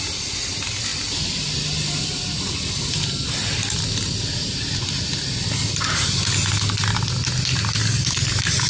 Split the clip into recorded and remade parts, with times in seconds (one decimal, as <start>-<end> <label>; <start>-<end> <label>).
0.0-8.7 recorded